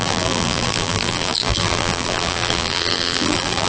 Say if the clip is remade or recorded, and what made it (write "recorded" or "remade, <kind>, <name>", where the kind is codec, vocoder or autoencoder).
remade, vocoder, BigVGAN v2